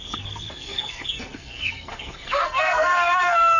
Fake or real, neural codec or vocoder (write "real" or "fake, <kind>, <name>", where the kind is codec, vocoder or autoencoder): fake, codec, SNAC